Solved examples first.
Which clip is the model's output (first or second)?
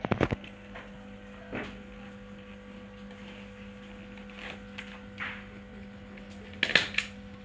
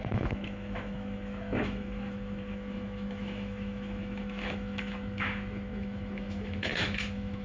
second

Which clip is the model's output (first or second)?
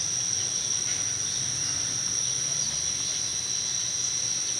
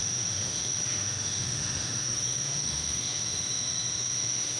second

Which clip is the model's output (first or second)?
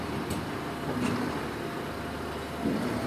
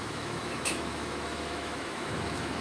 second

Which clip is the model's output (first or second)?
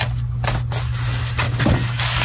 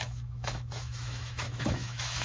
second